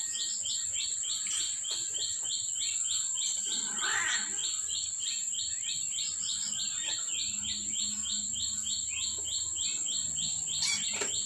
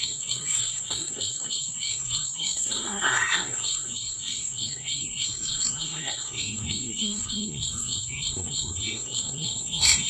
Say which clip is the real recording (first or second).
first